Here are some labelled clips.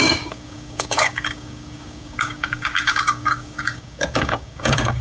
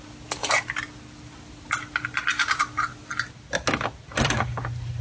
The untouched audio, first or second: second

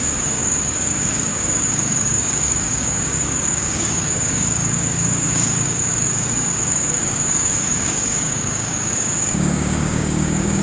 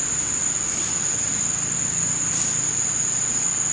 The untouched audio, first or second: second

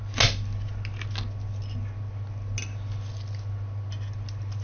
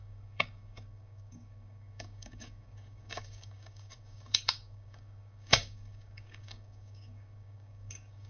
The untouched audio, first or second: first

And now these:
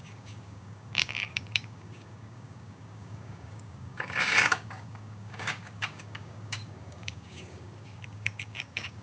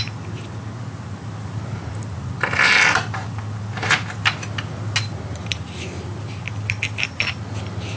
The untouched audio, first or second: second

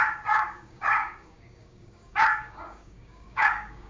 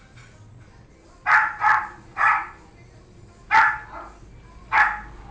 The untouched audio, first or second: second